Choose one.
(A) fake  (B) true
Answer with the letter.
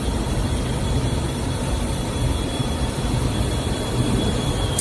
A